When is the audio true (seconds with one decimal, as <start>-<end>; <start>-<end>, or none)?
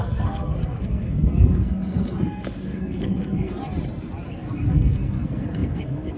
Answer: 3.6-4.3